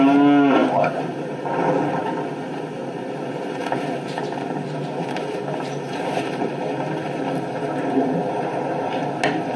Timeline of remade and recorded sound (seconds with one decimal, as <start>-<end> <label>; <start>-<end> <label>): 0.0-0.6 recorded; 0.6-1.6 remade; 1.6-2.8 recorded; 2.8-6.5 remade; 6.5-7.7 recorded; 7.7-8.9 remade; 8.9-9.6 recorded